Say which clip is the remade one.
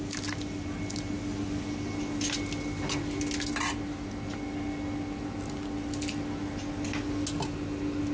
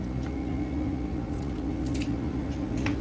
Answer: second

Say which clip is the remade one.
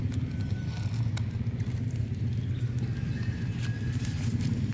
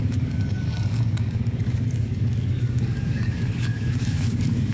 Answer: second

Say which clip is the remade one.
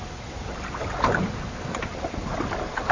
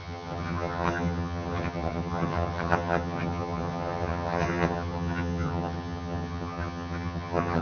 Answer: second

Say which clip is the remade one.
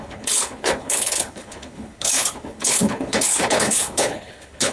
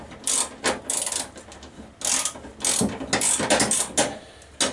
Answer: first